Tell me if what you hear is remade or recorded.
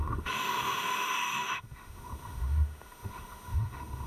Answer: remade